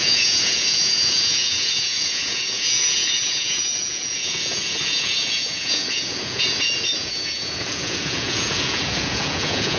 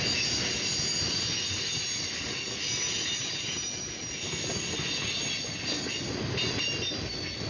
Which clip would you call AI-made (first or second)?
first